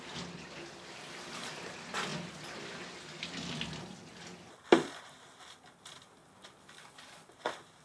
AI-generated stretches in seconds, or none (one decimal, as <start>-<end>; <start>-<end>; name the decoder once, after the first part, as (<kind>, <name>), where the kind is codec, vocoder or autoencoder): none